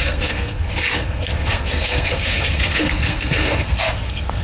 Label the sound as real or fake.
fake